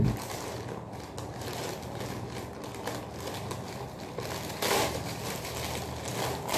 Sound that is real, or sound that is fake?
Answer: real